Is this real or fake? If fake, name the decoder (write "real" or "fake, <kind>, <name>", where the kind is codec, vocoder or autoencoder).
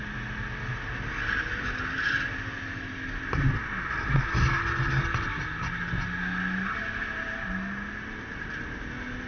real